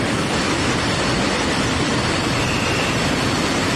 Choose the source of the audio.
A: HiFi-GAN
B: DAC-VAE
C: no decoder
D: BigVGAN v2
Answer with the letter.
C